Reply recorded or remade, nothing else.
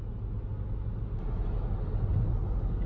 recorded